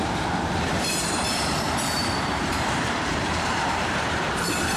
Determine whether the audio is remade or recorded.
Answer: remade